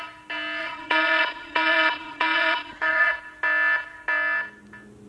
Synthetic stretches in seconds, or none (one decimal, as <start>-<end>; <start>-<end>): 0.6-3.1